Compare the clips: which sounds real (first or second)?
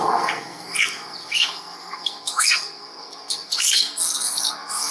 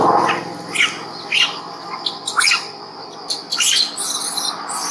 second